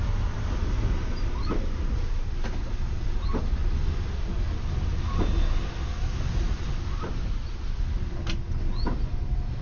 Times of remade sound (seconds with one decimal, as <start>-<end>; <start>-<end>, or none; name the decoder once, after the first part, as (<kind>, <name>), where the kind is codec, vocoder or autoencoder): none